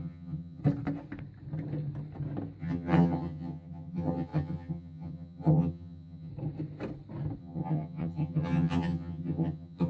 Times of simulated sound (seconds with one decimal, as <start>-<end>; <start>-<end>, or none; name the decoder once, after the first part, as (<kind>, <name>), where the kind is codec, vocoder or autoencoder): 0.0-0.6 (vocoder, HiFi-GAN); 2.6-6.3; 7.4-9.9